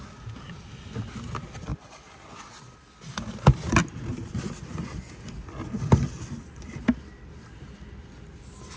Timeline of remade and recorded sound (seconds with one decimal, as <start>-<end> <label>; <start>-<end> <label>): 0.0-8.8 recorded